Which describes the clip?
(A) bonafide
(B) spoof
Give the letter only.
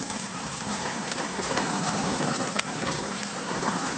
B